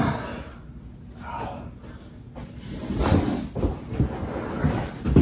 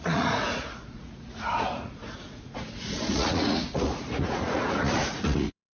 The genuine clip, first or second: first